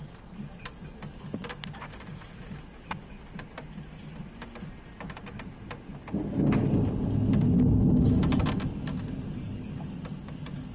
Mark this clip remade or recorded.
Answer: recorded